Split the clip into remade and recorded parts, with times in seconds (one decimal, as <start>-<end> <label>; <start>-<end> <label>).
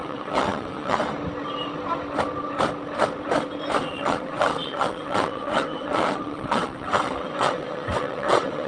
0.0-1.0 remade; 1.0-3.8 recorded; 3.8-8.7 remade